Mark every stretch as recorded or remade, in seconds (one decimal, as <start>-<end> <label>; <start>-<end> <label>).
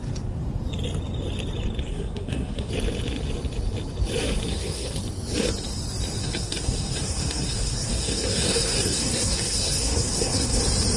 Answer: 0.0-1.9 recorded; 1.9-2.7 remade; 2.7-4.5 recorded; 4.5-5.0 remade; 5.0-6.2 recorded; 6.2-10.6 remade; 10.6-11.0 recorded